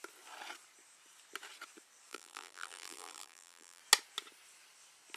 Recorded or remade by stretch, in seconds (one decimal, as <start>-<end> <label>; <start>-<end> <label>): 0.0-2.1 recorded; 2.1-3.8 remade; 3.8-5.2 recorded